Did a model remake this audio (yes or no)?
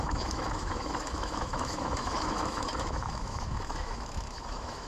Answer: yes